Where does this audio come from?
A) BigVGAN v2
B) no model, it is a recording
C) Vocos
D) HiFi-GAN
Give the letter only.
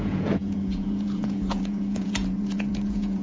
C